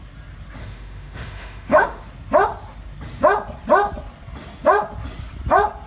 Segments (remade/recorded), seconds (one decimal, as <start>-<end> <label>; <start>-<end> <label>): 0.0-0.6 recorded; 0.6-2.0 remade; 2.0-5.9 recorded